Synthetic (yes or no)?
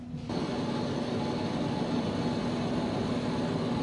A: no